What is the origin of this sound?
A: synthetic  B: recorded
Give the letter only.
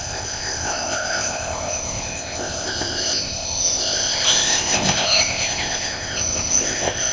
A